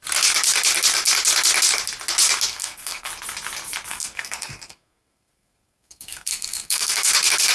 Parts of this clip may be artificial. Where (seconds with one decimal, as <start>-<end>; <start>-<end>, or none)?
2.5-3.1; 3.9-7.1